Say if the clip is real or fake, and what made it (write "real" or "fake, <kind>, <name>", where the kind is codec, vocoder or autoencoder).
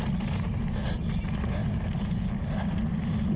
real